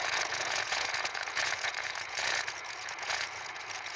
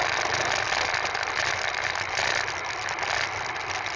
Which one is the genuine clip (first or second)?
second